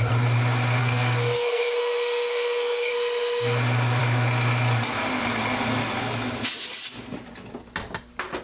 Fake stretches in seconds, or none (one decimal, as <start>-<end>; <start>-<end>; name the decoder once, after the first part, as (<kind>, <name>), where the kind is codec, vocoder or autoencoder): 0.8-2.9 (codec, SNAC)